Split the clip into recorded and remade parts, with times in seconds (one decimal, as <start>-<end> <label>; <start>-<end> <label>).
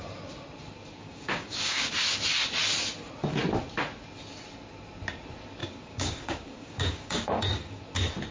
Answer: 0.0-1.0 recorded; 1.0-1.9 remade; 1.9-5.6 recorded; 5.6-7.8 remade; 7.8-8.3 recorded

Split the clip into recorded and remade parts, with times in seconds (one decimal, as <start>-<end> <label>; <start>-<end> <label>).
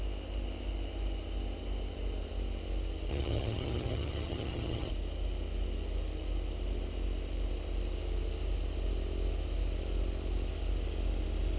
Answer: 0.0-3.1 recorded; 3.1-4.9 remade; 4.9-11.6 recorded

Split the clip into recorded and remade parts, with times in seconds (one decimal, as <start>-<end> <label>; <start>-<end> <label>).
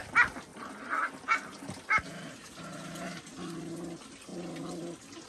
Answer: 0.0-5.3 recorded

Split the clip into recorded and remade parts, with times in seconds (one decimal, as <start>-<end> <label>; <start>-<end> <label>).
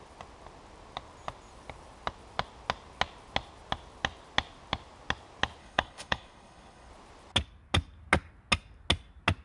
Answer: 0.0-5.6 recorded; 5.6-6.9 remade; 6.9-9.4 recorded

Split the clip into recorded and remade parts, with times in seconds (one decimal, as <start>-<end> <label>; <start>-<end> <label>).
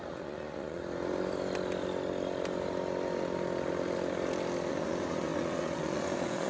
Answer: 0.0-0.8 remade; 0.8-4.7 recorded; 4.7-6.5 remade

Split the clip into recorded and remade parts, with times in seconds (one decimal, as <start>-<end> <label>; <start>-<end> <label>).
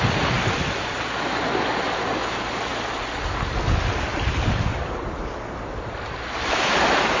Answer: 0.0-7.2 recorded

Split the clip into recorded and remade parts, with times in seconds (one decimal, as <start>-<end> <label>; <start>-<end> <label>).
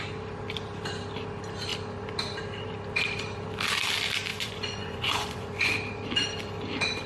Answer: 0.0-4.3 recorded; 4.3-5.7 remade; 5.7-7.1 recorded